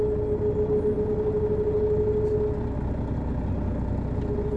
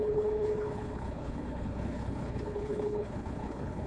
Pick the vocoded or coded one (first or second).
second